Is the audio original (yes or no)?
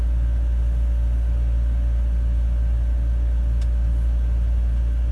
yes